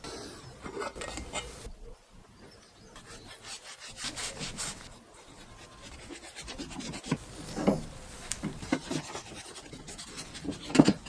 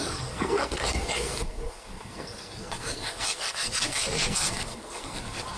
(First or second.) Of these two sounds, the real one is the first